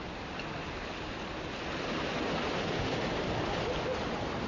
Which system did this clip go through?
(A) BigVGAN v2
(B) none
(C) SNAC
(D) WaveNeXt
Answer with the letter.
B